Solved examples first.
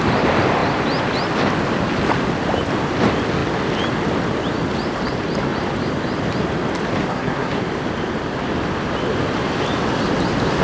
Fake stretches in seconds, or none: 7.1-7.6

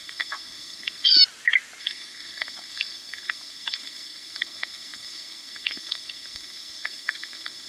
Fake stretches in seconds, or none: 0.0-1.2; 1.8-7.7